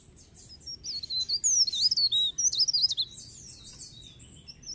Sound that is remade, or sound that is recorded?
recorded